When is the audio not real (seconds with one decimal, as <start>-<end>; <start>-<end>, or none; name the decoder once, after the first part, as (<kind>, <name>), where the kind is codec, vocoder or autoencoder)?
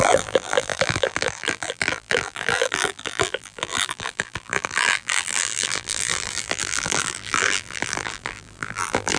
0.0-9.2 (vocoder, BigVGAN v2)